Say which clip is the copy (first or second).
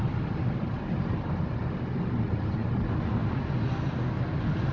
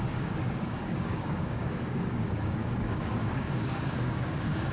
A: second